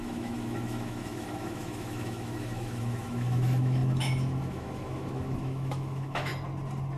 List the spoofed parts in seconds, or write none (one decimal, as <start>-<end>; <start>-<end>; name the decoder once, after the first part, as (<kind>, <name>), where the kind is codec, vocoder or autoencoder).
0.0-6.3 (autoencoder, DAC-VAE)